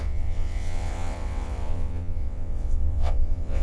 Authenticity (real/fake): fake